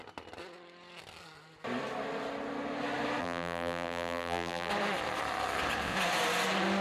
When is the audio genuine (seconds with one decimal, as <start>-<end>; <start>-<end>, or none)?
0.0-3.2; 4.7-6.8